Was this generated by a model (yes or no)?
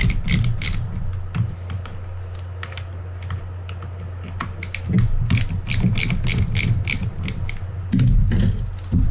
no